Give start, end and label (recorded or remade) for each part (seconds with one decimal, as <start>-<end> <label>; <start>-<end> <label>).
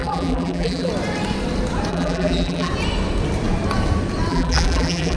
0.0-0.9 remade; 0.9-1.9 recorded; 1.9-2.7 remade; 2.7-4.3 recorded; 4.3-5.2 remade